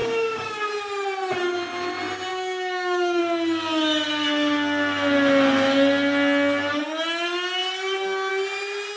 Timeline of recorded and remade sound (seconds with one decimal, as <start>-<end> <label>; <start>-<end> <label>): 0.0-0.6 remade; 0.6-2.3 recorded; 2.3-3.2 remade; 3.2-9.0 recorded